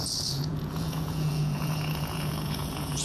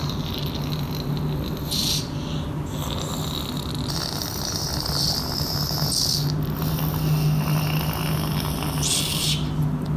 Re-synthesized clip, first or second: first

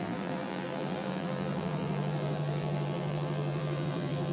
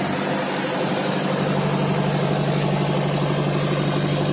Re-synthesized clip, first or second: first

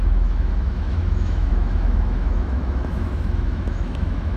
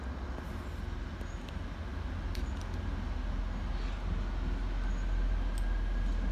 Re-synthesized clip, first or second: first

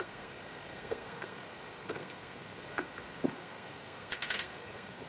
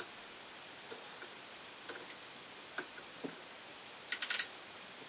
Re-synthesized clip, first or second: first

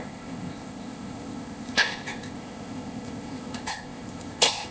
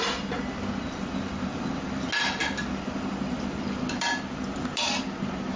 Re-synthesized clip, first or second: first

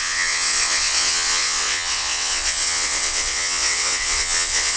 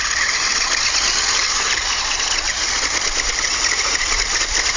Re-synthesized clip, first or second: first